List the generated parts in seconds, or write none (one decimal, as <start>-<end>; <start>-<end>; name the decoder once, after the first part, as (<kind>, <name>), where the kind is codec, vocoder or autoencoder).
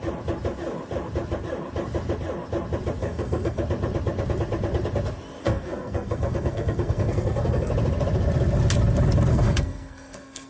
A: 3.0-3.6 (codec, SNAC); 5.4-7.7; 9.3-10.5